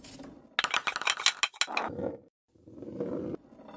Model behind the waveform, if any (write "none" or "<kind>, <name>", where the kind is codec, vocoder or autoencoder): none